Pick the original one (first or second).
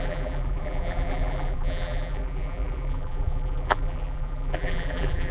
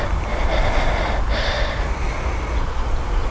second